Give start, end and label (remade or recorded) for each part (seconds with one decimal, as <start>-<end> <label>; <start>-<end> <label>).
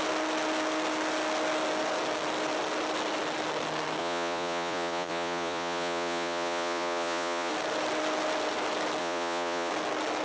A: 0.0-4.0 recorded; 4.0-7.5 remade; 7.5-9.0 recorded; 9.0-9.7 remade; 9.7-10.2 recorded